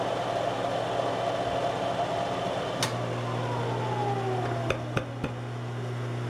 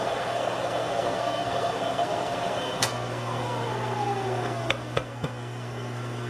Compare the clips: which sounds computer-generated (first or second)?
second